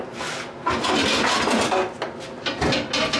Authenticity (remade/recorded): recorded